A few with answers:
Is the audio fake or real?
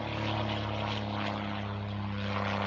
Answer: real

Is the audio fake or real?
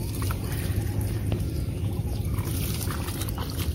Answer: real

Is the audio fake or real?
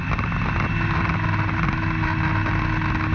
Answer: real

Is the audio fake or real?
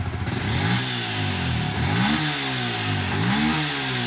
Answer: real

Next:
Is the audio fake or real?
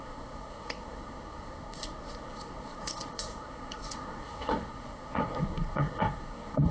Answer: fake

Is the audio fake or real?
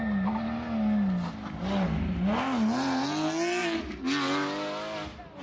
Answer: real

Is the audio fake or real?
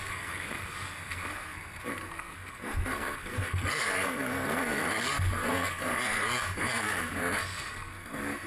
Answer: fake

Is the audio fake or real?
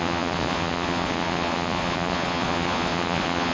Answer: fake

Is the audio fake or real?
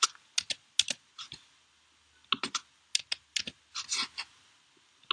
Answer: real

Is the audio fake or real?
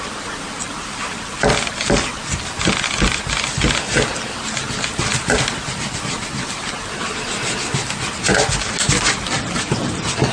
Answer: real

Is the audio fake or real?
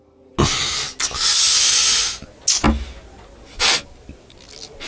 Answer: real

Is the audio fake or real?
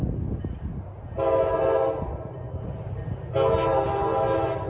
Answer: real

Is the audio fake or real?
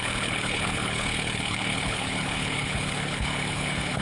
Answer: fake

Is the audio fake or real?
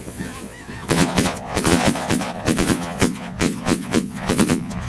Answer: fake